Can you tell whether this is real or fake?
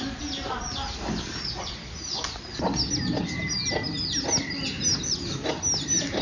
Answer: real